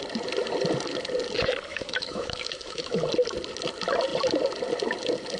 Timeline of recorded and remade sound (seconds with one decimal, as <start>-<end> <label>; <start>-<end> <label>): 0.0-1.7 recorded; 1.7-3.0 remade; 3.0-5.4 recorded